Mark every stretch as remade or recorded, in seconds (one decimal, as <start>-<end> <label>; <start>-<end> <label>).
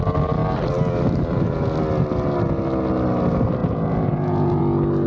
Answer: 0.0-3.6 recorded; 3.6-4.6 remade; 4.6-5.1 recorded